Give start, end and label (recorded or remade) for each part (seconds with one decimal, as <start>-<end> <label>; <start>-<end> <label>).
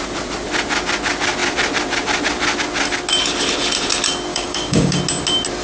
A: 0.0-4.3 recorded; 4.3-5.0 remade; 5.0-5.6 recorded